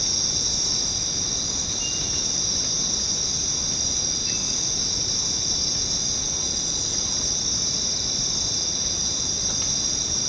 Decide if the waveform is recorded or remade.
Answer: recorded